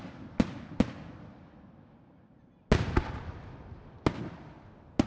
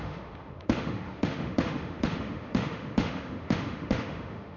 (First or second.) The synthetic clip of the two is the second